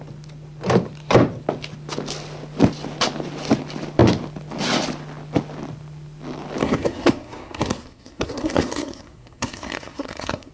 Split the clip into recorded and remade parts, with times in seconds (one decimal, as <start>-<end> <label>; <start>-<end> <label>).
0.0-6.6 recorded; 6.6-10.5 remade